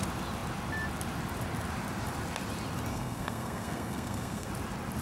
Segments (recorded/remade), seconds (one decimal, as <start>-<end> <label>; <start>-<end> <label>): 0.0-2.9 recorded; 2.9-4.5 remade; 4.5-5.0 recorded